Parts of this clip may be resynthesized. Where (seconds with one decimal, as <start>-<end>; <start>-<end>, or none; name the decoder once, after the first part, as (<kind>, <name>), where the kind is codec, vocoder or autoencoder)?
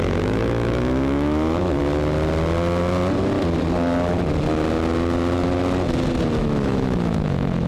0.0-1.8 (autoencoder, DAC-VAE); 6.4-7.7